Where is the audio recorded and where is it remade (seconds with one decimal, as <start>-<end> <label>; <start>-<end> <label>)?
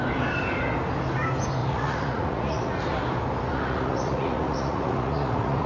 0.0-1.6 recorded; 1.6-2.7 remade; 2.7-3.5 recorded; 3.5-5.7 remade